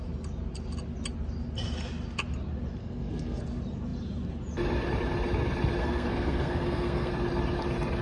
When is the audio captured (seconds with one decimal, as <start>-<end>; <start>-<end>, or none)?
0.0-2.8; 3.4-5.8; 7.1-8.0